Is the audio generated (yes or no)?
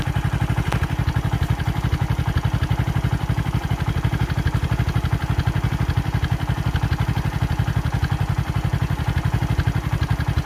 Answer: no